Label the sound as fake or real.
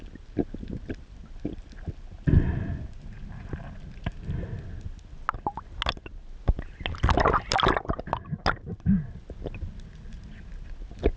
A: real